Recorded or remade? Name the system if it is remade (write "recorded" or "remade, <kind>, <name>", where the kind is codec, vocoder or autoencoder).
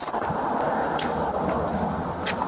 remade, vocoder, BigVGAN v2